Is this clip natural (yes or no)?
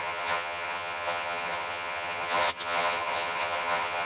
no